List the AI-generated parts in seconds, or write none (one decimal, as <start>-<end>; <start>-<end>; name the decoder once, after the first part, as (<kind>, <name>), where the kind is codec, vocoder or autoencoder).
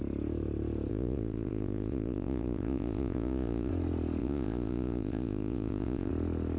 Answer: 0.9-3.7 (vocoder, Vocos); 4.2-6.1